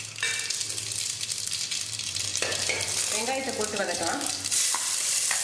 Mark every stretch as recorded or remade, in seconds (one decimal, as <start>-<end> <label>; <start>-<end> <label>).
0.0-3.7 recorded; 3.7-4.3 remade; 4.3-5.4 recorded